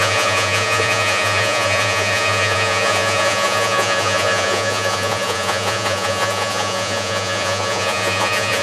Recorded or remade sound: remade